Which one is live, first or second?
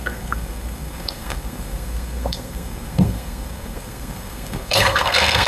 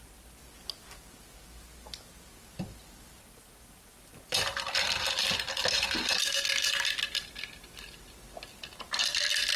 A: second